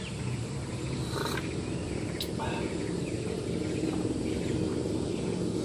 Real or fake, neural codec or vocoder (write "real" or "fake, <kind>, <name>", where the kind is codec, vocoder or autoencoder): real